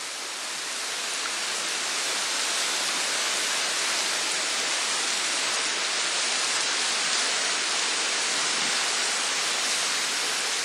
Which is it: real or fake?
real